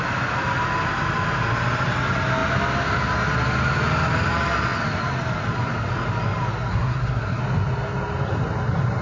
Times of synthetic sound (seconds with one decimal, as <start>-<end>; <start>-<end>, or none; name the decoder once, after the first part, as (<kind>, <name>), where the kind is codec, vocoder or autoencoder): 6.7-7.4 (codec, SNAC)